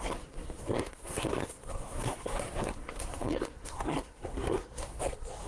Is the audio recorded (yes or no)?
no